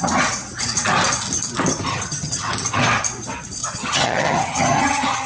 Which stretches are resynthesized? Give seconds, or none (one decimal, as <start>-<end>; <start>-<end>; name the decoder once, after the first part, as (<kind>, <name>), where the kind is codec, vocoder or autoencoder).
1.9-2.5 (vocoder, HiFi-GAN); 3.6-5.3